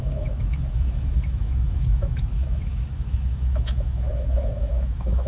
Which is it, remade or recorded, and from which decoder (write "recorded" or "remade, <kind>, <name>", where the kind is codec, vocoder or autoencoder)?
remade, autoencoder, DAC-VAE